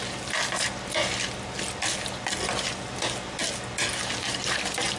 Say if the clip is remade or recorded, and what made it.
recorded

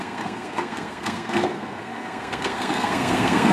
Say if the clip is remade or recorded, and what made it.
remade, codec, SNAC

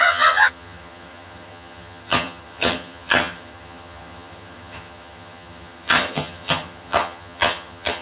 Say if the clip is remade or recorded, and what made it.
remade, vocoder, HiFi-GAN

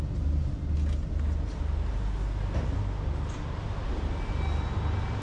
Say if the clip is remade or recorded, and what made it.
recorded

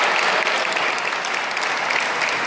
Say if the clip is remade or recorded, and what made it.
recorded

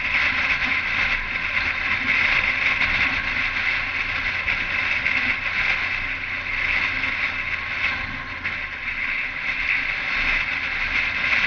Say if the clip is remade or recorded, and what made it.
recorded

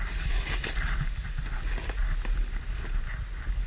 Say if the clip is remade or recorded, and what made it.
recorded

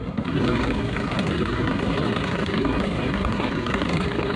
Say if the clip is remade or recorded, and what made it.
remade, codec, SNAC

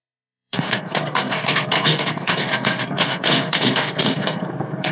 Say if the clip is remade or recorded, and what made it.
remade, codec, SNAC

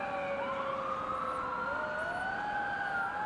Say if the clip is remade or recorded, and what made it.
recorded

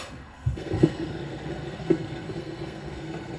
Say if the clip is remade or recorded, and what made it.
remade, codec, SNAC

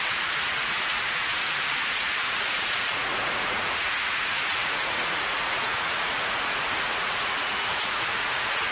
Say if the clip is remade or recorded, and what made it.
remade, vocoder, Vocos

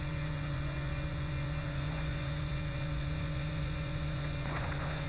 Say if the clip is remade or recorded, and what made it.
remade, vocoder, Vocos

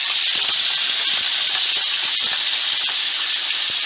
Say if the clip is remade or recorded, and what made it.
recorded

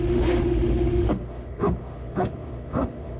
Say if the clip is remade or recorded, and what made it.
remade, autoencoder, DAC-VAE